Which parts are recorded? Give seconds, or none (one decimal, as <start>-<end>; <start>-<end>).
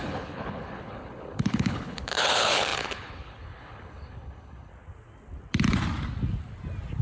4.7-7.0